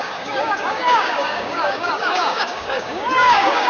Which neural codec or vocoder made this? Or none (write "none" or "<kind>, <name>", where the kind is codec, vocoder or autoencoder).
codec, DAC